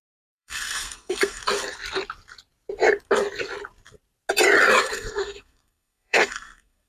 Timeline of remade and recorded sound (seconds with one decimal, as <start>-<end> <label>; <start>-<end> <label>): 0.0-1.4 remade; 1.4-4.8 recorded; 4.8-6.9 remade